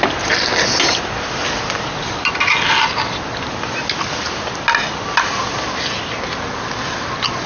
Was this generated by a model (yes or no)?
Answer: no